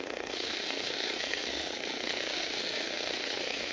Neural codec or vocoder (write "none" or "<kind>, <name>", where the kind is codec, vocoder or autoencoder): codec, SNAC